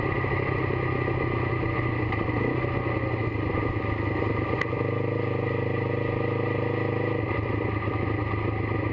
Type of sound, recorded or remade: recorded